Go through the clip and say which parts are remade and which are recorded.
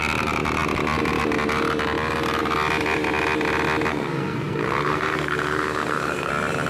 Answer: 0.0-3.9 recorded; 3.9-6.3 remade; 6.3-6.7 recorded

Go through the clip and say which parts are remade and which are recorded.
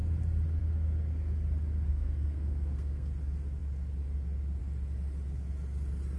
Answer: 0.0-1.9 recorded; 1.9-3.1 remade; 3.1-6.2 recorded